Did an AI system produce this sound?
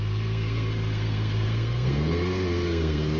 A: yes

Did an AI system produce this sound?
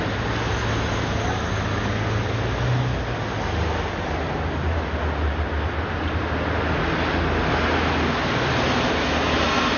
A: no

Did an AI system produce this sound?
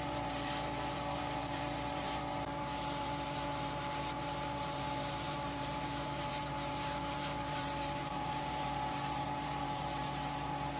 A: yes